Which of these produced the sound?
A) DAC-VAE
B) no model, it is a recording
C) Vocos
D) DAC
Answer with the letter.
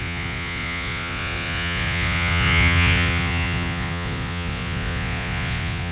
C